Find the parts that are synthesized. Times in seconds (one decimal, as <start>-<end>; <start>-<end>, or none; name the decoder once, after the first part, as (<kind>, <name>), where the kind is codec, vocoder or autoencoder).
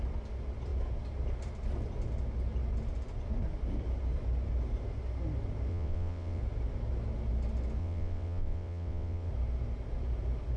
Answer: 5.7-6.4 (vocoder, WaveNeXt); 7.8-9.3